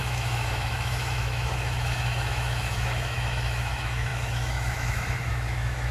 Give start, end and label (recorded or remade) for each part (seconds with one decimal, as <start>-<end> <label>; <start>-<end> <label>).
0.0-5.9 remade